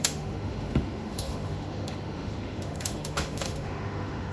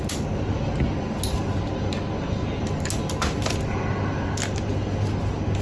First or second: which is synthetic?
first